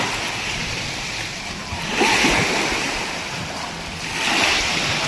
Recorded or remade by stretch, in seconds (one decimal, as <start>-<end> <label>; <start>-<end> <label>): 0.0-1.6 remade; 1.6-5.1 recorded